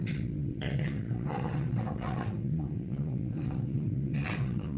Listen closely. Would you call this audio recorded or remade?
remade